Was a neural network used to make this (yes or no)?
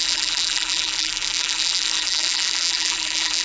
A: yes